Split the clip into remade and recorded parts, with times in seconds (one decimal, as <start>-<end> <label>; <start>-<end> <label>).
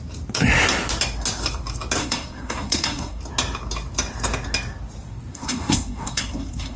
0.0-2.0 recorded; 2.0-3.2 remade; 3.2-5.3 recorded; 5.3-6.8 remade